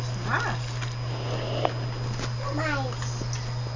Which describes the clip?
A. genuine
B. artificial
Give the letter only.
A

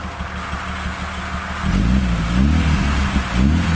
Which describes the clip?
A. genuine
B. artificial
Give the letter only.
A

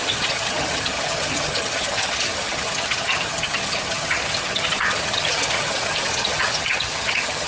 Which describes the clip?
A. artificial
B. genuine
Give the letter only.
A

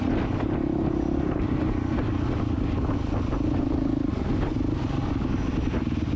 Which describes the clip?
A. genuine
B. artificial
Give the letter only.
A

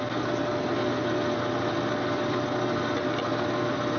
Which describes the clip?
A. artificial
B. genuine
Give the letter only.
B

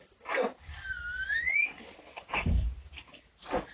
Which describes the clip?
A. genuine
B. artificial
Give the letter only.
A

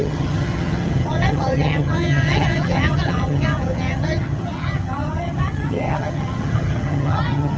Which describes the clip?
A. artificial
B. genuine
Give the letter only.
A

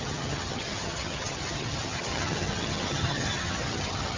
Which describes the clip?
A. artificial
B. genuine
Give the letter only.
A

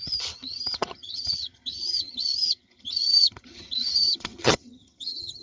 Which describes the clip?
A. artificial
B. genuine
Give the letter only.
A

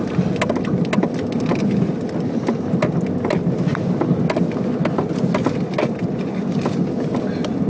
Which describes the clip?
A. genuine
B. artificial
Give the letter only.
A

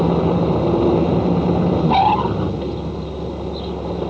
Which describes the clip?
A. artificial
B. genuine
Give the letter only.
B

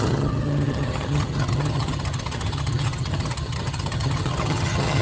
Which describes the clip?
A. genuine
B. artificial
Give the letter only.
B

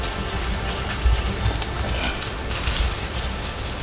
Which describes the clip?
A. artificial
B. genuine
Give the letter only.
B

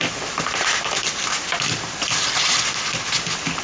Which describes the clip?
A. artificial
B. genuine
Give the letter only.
B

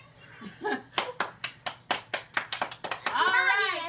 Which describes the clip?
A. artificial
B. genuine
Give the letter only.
B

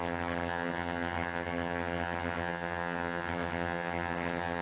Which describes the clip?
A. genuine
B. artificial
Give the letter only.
B